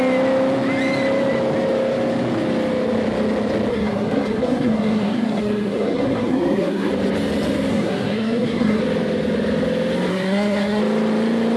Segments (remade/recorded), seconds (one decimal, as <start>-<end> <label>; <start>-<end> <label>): 0.0-3.7 recorded; 3.7-6.9 remade; 6.9-7.7 recorded; 7.7-8.8 remade; 8.8-10.1 recorded; 10.1-10.8 remade; 10.8-11.6 recorded